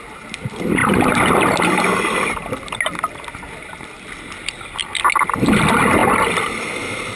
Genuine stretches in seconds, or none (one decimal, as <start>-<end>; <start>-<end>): 0.0-7.2

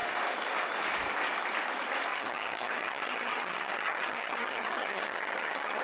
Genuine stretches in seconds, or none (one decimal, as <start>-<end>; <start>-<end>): 0.0-2.1

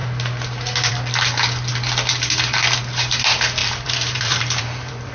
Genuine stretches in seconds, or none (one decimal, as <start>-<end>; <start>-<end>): 0.0-3.6

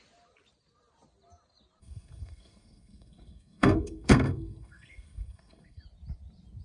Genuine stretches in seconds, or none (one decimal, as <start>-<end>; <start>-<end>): 0.0-1.8; 5.8-6.6

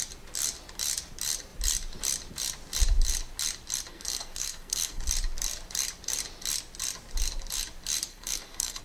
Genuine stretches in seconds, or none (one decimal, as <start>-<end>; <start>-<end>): 0.0-3.9; 5.0-8.1